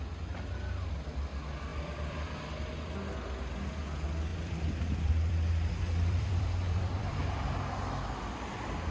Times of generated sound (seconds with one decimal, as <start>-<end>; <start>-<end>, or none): 1.7-2.7; 4.3-7.2